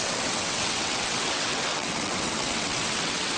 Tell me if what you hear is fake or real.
fake